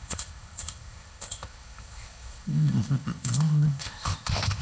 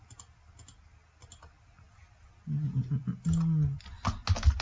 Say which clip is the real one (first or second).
second